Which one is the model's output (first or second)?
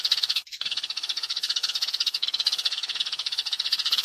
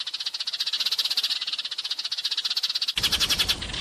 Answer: first